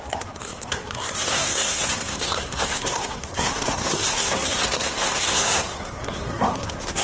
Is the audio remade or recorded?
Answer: remade